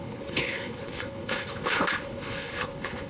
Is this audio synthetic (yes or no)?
yes